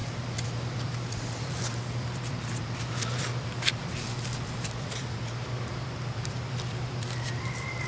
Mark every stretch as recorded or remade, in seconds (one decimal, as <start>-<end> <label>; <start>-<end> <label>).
0.0-7.9 remade